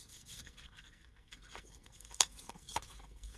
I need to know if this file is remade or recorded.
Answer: remade